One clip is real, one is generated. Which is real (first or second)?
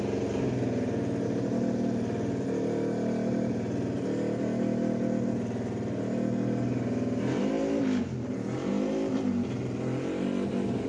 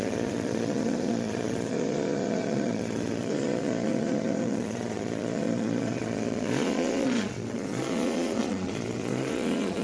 first